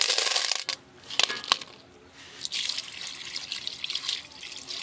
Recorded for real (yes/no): yes